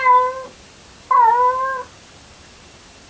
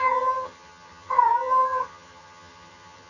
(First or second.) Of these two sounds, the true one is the first